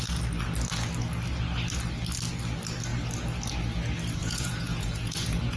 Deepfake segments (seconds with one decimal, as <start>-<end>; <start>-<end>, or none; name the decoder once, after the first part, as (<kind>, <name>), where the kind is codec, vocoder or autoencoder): 4.2-5.6 (vocoder, Vocos)